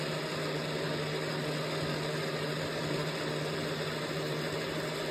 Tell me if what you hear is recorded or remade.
recorded